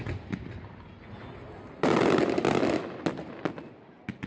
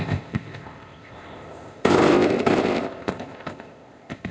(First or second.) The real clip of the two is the first